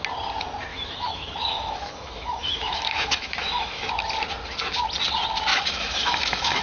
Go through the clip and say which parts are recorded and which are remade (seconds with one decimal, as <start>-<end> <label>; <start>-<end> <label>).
0.0-0.7 recorded; 0.7-3.9 remade; 3.9-5.5 recorded; 5.5-6.6 remade